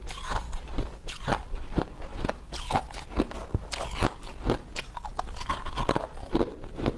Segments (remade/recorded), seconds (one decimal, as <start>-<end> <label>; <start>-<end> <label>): 0.0-7.0 recorded